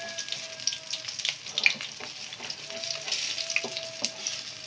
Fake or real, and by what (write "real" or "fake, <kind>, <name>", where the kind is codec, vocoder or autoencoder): real